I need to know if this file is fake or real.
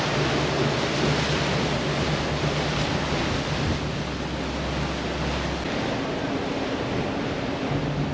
real